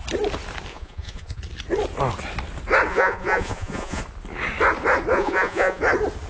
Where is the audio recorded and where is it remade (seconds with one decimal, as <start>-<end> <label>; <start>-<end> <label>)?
0.0-0.7 recorded; 0.7-1.4 remade; 1.4-2.9 recorded; 2.9-4.0 remade; 4.0-5.1 recorded; 5.1-5.8 remade; 5.8-6.3 recorded